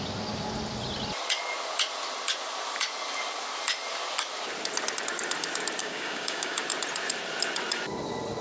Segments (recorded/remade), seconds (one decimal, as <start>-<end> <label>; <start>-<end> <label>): 0.0-5.8 recorded; 5.8-6.6 remade; 6.6-8.4 recorded